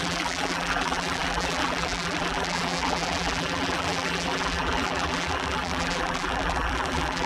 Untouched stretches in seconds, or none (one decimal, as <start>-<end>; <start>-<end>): none